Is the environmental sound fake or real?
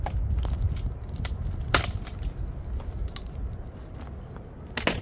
real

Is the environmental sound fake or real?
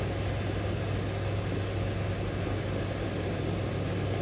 real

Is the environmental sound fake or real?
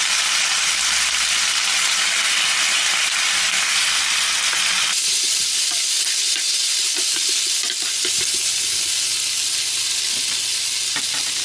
real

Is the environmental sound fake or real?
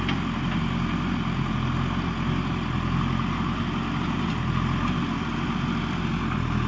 real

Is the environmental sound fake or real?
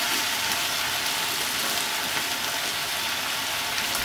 real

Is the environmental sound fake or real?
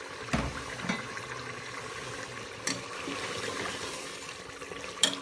real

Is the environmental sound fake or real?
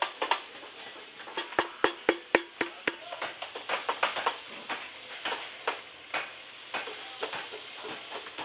real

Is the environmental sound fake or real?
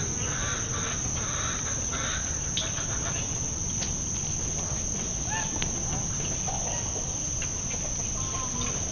real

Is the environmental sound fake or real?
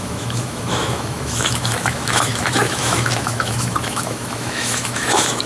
fake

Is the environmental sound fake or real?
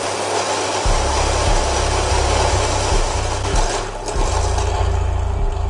real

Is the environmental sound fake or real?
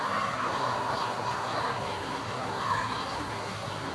fake